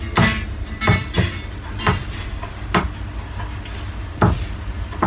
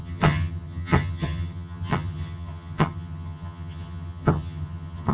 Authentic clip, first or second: first